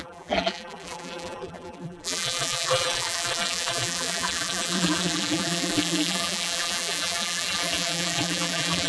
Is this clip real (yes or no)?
no